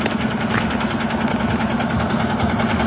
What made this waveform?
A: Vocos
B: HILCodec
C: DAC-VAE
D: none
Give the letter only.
D